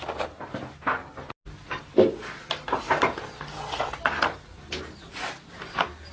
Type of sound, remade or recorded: recorded